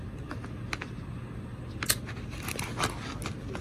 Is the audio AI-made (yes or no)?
no